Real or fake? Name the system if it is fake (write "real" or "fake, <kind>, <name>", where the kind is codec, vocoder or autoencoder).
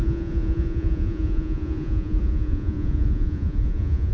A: fake, vocoder, Vocos